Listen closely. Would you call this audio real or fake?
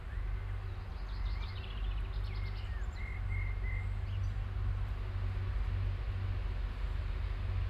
real